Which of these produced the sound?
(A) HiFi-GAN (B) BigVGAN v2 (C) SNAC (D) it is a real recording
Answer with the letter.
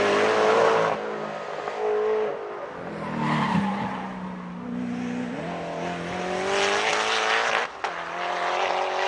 D